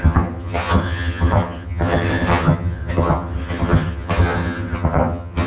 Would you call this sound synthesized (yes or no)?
yes